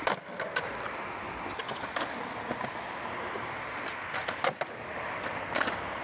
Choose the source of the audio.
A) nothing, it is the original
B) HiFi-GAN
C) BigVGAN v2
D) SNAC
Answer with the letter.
A